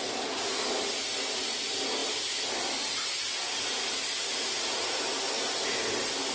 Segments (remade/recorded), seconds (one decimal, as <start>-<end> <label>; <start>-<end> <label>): 0.0-6.3 recorded

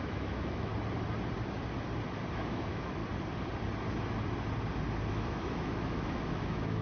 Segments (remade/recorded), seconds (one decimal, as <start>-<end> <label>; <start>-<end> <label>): 0.0-0.7 remade; 0.7-2.3 recorded; 2.3-3.0 remade; 3.0-5.1 recorded; 5.1-6.8 remade

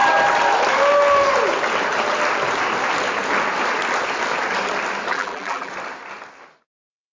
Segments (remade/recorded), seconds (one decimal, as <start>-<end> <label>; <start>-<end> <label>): 0.0-5.1 recorded; 5.1-5.7 remade; 5.7-7.1 recorded